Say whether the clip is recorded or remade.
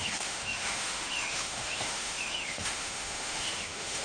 remade